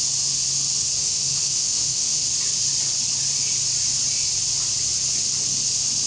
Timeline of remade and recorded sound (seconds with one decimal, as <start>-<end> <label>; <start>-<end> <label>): 0.0-1.0 recorded; 1.0-2.3 remade; 2.3-6.1 recorded